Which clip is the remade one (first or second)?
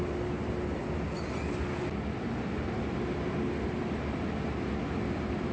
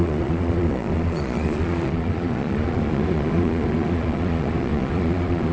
second